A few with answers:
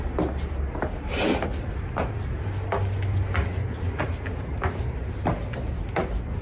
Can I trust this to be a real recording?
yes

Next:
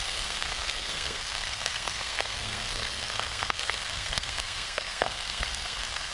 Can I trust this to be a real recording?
no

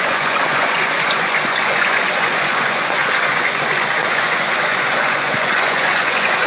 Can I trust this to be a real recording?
no